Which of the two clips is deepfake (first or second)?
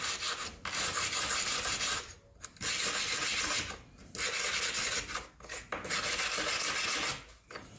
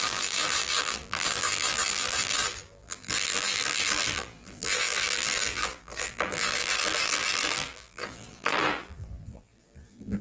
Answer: second